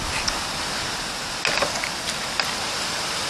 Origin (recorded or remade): recorded